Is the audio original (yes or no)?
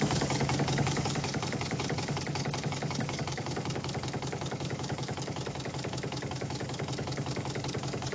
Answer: no